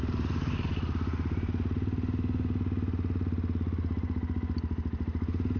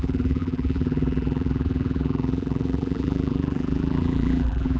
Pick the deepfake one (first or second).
second